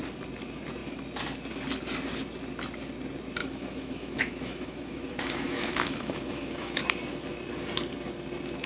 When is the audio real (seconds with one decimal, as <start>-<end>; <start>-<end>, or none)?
0.0-3.4; 6.8-8.7